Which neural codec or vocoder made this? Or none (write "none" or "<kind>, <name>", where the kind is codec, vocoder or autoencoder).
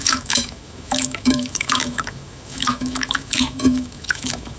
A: autoencoder, DAC-VAE